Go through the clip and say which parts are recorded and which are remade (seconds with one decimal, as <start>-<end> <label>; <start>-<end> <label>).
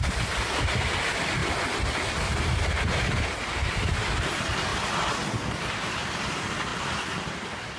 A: 0.0-7.8 recorded